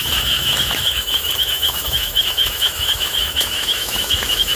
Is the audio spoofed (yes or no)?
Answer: yes